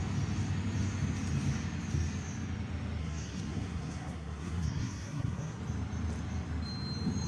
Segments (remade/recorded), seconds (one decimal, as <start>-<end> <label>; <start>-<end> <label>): 0.0-3.0 recorded; 3.0-5.6 remade; 5.6-7.3 recorded